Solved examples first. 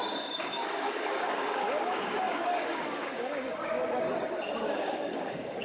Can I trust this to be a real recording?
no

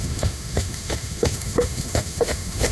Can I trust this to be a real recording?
no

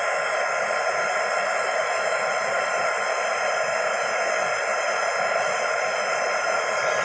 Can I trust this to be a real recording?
no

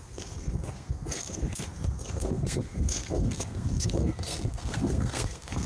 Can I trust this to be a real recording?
no